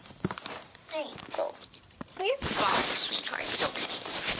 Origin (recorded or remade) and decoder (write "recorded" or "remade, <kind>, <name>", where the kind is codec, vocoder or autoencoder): remade, vocoder, BigVGAN v2